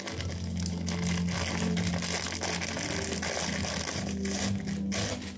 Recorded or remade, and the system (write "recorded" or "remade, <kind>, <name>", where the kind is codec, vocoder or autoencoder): recorded